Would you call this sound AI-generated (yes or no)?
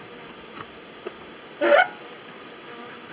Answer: no